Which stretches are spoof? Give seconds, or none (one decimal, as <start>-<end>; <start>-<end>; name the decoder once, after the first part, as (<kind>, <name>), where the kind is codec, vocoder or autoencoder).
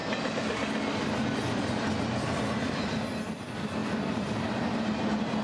none